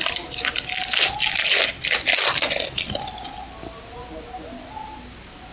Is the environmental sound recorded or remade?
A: recorded